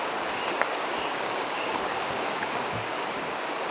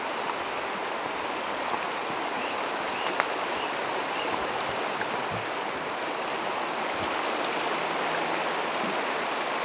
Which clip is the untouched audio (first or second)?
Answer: second